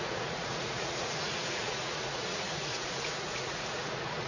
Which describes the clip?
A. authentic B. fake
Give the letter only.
B